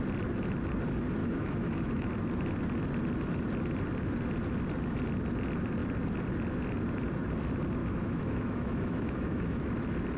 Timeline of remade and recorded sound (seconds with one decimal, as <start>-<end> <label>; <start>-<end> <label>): 0.0-1.2 recorded; 1.2-2.1 remade; 2.1-7.8 recorded; 7.8-9.7 remade; 9.7-10.2 recorded